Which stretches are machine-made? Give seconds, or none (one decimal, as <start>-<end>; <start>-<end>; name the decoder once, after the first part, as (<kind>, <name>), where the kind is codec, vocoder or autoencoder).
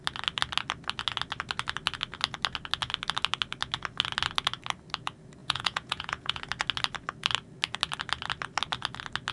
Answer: 5.4-6.4 (vocoder, Vocos)